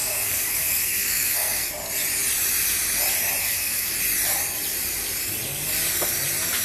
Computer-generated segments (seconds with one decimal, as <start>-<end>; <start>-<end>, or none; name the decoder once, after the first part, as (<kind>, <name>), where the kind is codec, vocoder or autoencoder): 0.0-1.7 (codec, SNAC); 3.4-3.9